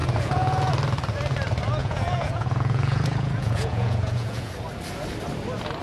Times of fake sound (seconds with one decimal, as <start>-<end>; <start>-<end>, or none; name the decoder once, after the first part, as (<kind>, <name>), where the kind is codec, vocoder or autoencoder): 0.0-0.7 (vocoder, Vocos); 1.8-4.5